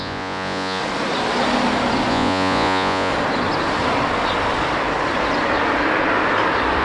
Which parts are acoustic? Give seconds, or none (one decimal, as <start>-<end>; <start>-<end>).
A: 0.8-2.1; 3.1-6.8